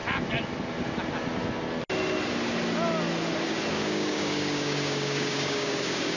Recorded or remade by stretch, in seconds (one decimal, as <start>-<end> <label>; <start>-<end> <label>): 0.0-3.7 recorded; 3.7-6.2 remade